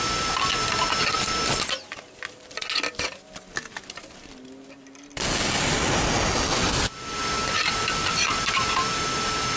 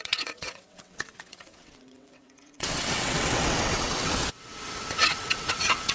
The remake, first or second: second